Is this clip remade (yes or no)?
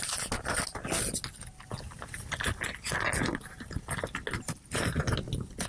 no